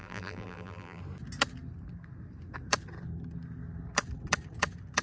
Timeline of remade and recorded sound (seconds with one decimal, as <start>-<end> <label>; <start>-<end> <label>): 0.0-1.0 remade; 1.0-5.0 recorded